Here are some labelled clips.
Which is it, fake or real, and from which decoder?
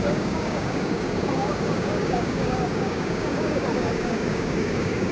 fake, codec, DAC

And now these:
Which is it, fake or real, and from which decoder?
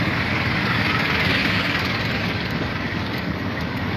fake, codec, DAC